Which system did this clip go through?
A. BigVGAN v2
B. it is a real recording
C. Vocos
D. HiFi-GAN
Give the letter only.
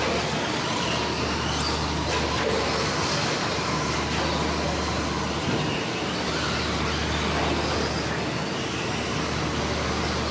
B